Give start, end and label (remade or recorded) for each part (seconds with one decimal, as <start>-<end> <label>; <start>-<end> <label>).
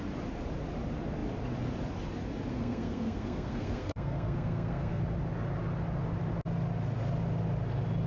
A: 0.0-2.5 recorded; 2.5-5.0 remade; 5.0-8.1 recorded